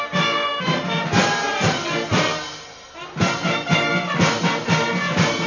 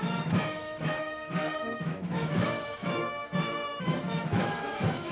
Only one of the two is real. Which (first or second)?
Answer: first